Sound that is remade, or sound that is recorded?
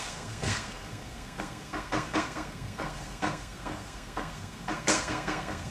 remade